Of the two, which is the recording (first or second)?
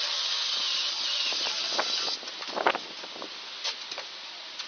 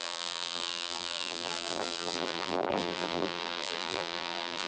first